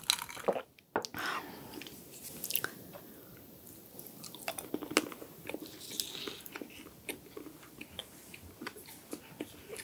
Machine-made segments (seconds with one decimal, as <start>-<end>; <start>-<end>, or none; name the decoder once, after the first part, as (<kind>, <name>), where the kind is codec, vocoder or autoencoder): none